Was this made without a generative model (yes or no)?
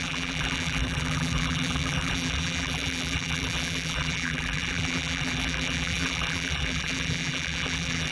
no